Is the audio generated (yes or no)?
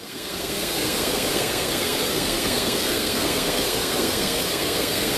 yes